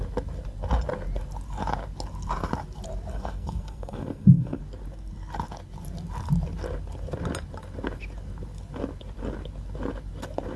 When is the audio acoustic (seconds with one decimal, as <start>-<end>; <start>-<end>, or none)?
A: 0.0-3.1; 4.6-10.6